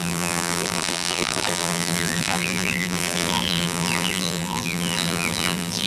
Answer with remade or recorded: remade